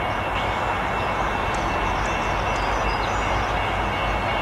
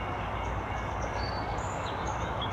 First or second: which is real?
first